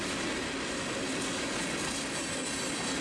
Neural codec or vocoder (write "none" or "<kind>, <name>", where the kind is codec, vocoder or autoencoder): none